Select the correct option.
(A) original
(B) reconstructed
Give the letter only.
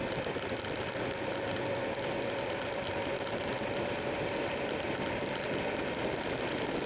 A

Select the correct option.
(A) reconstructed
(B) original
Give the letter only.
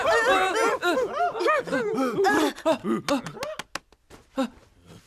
B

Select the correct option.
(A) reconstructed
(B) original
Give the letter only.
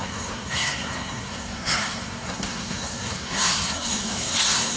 A